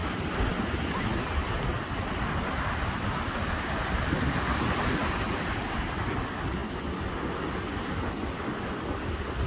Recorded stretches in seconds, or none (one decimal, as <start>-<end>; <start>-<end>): 0.0-9.5